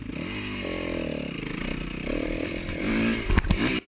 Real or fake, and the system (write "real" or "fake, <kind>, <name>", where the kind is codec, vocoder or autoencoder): real